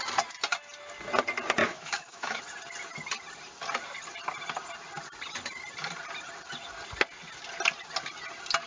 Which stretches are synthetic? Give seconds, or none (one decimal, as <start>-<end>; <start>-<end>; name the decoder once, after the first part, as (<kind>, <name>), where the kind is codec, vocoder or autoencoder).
1.6-2.4 (autoencoder, DAC-VAE)